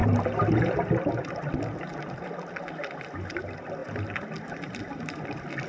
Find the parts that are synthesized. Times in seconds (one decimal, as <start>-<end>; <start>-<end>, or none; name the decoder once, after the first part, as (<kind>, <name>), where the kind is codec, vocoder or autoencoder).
none